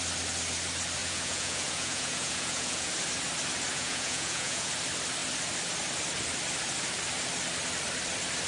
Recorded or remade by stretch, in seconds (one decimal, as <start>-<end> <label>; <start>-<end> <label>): 0.0-1.0 recorded; 1.0-2.9 remade; 2.9-3.7 recorded; 3.7-4.7 remade; 4.7-8.5 recorded